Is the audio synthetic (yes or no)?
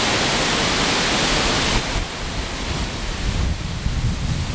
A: no